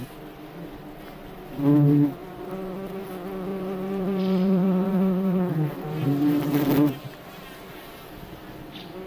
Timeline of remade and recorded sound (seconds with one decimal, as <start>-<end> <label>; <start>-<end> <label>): 0.0-2.2 recorded; 2.2-3.0 remade; 3.0-3.5 recorded; 3.5-7.9 remade; 7.9-9.1 recorded